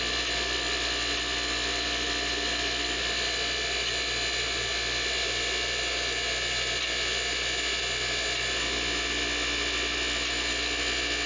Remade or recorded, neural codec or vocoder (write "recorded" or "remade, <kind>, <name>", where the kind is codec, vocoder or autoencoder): recorded